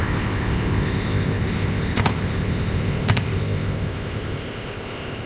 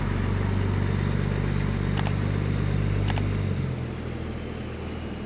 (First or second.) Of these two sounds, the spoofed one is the first